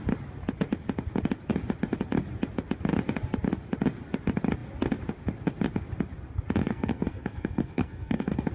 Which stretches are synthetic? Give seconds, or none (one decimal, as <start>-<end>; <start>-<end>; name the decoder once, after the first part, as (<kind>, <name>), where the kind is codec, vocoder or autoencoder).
6.6-8.5 (codec, SNAC)